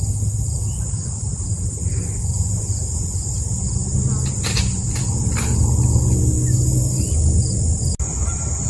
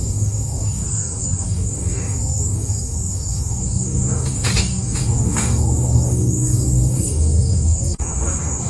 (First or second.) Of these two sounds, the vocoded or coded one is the second